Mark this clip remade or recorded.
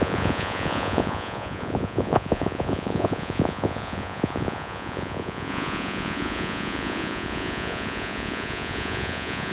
remade